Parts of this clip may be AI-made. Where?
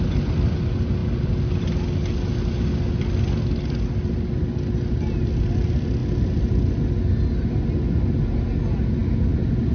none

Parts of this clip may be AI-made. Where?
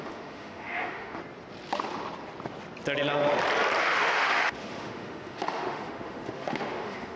0.0-1.2 (autoencoder, DAC-VAE); 3.8-7.2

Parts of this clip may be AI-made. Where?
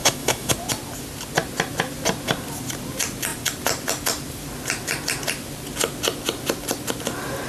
0.0-0.5 (autoencoder, DAC-VAE)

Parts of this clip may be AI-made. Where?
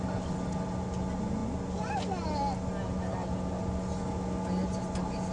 none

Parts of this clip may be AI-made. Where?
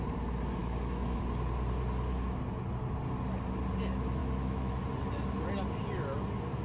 0.6-1.2 (autoencoder, DAC-VAE); 4.2-4.8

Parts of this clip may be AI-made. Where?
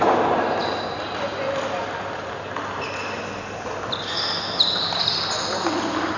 none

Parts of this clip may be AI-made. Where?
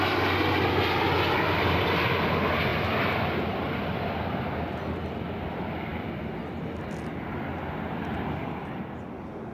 none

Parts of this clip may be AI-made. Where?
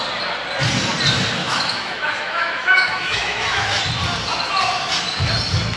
1.4-3.8 (autoencoder, DAC-VAE)